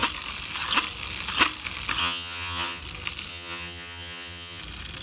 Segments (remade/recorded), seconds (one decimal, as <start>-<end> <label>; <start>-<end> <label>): 0.0-2.0 recorded; 2.0-2.8 remade; 2.8-3.3 recorded; 3.3-4.6 remade; 4.6-5.0 recorded